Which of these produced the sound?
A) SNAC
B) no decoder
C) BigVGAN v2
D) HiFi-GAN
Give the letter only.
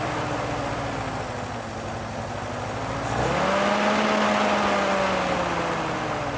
B